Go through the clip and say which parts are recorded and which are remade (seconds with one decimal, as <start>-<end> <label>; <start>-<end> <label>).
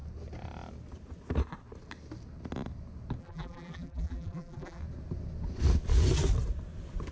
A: 0.0-3.2 recorded; 3.2-4.8 remade; 4.8-7.1 recorded